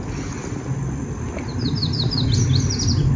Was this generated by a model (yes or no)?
no